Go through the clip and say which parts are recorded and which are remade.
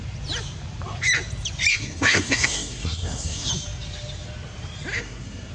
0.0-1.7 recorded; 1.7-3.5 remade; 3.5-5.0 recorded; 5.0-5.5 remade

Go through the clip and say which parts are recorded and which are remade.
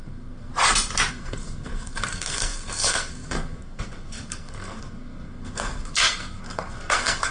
0.0-0.5 remade; 0.5-1.1 recorded; 1.1-7.3 remade